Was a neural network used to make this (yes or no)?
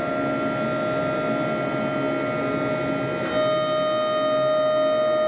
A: no